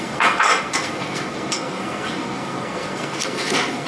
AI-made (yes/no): yes